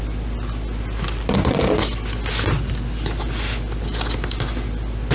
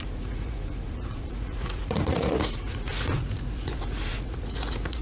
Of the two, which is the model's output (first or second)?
second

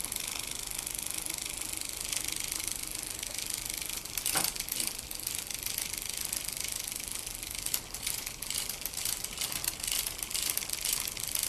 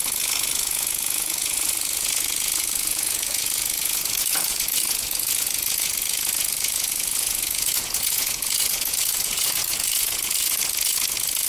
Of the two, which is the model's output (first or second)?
second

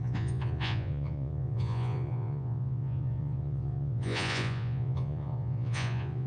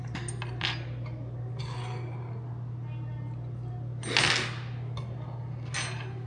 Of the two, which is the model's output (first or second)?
first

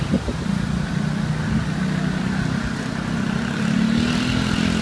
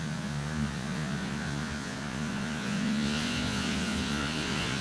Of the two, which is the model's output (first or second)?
second